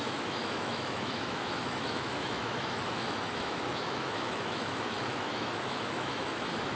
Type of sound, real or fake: fake